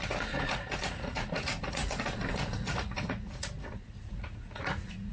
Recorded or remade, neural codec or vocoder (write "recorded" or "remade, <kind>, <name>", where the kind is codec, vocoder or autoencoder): remade, vocoder, Vocos